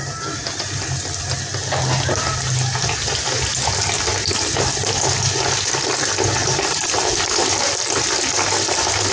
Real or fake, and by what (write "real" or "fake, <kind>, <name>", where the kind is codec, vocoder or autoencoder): real